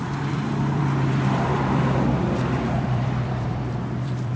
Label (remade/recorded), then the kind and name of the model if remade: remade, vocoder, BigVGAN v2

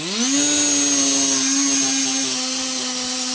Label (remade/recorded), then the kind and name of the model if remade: recorded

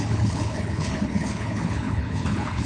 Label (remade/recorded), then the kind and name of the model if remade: remade, codec, HILCodec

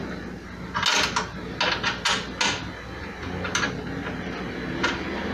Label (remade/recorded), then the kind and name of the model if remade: recorded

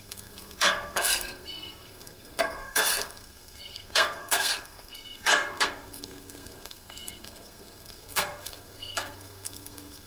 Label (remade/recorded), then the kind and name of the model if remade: remade, codec, SNAC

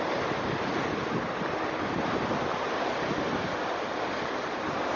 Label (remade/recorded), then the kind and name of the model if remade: recorded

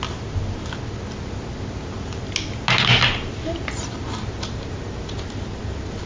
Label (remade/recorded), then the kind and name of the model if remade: recorded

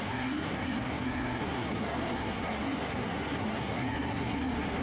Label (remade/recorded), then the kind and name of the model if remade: remade, codec, SNAC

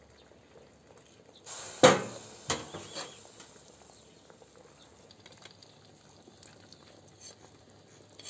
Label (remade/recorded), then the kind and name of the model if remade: recorded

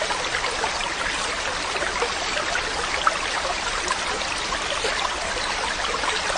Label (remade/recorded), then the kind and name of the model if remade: recorded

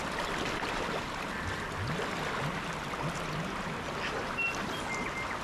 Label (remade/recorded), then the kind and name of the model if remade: recorded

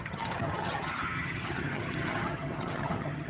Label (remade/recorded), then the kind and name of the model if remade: remade, vocoder, HiFi-GAN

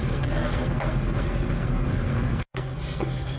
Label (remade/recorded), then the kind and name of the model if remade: remade, codec, SNAC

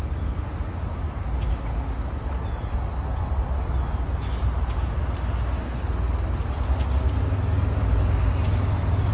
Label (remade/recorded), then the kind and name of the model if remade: recorded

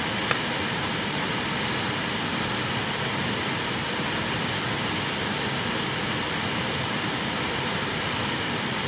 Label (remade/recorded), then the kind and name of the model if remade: recorded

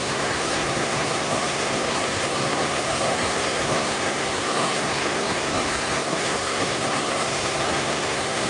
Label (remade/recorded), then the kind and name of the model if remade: remade, codec, SNAC